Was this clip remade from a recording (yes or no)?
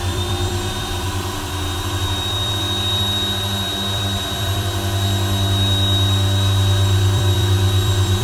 yes